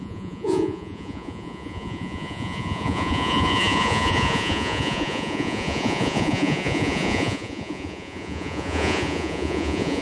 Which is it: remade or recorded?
remade